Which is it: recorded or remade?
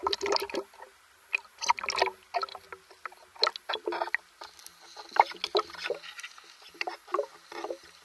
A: recorded